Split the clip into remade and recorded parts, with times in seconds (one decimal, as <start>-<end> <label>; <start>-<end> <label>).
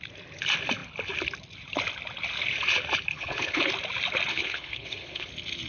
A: 0.0-3.1 recorded; 3.1-3.7 remade; 3.7-4.3 recorded; 4.3-5.3 remade; 5.3-5.7 recorded